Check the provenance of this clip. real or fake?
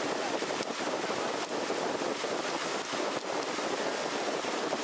real